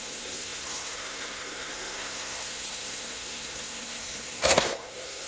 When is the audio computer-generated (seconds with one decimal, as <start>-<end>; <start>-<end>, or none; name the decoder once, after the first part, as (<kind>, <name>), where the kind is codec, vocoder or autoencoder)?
0.0-5.3 (codec, SNAC)